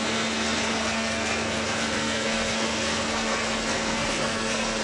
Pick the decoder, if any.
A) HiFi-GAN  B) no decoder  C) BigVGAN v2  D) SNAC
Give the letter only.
D